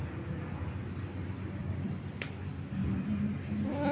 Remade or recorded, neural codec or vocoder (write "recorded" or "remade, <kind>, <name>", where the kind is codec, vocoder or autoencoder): recorded